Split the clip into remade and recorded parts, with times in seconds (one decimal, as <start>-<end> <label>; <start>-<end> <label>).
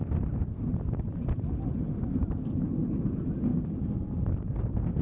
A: 0.0-5.0 recorded